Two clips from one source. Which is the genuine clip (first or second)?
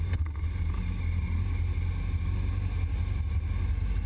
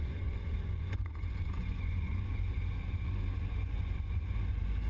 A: first